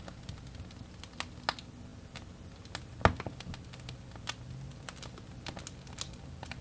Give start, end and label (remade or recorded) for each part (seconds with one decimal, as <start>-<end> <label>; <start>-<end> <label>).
0.0-6.6 recorded